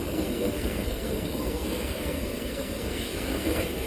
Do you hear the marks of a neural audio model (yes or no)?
yes